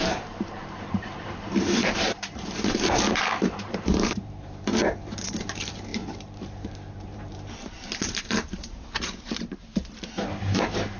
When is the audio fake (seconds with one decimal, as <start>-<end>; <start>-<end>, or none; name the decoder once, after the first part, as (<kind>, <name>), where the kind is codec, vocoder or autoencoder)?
0.0-9.7 (vocoder, BigVGAN v2); 10.4-11.0